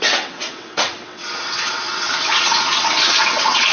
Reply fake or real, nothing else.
fake